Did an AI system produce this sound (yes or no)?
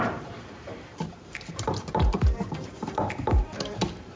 yes